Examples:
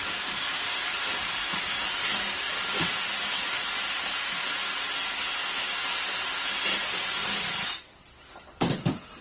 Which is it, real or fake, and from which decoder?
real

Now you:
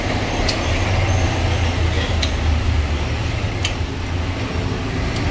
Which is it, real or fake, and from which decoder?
real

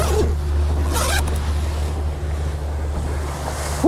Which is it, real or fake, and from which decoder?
real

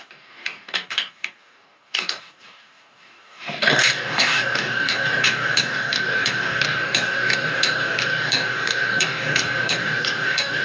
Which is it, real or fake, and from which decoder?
fake, codec, DAC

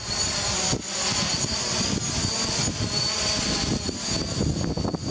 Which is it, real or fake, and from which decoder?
real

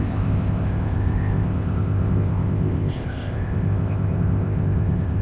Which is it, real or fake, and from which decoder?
fake, codec, ZipCodec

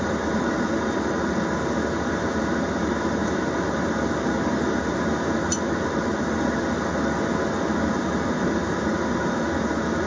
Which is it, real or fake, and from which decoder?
real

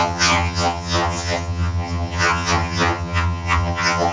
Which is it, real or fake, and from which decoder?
fake, vocoder, HiFi-GAN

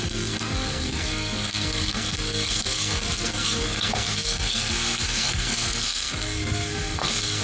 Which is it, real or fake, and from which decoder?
fake, codec, SNAC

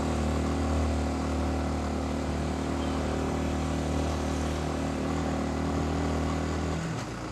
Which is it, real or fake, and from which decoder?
real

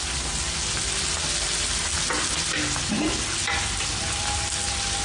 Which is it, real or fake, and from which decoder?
real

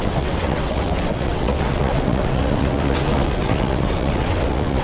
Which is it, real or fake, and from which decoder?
fake, vocoder, WaveNeXt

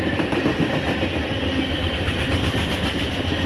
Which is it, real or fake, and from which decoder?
real